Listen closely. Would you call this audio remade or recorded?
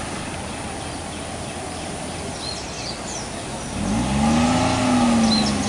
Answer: recorded